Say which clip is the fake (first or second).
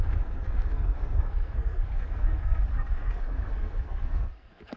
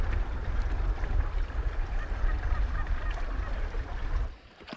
first